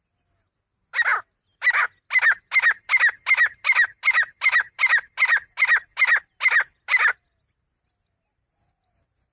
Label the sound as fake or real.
real